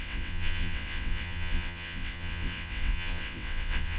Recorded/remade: remade